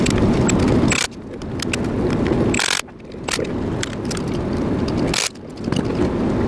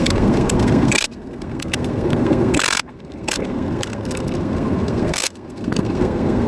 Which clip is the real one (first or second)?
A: first